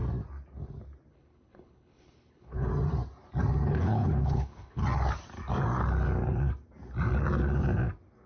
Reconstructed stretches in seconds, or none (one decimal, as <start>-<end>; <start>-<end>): 1.1-2.7; 3.7-4.8